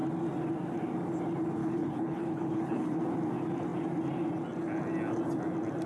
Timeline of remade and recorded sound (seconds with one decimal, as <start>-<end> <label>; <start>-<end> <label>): 0.0-1.6 recorded; 1.6-3.0 remade; 3.0-5.9 recorded